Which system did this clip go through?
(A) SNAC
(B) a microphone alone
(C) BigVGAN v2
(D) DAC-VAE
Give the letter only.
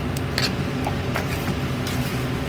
B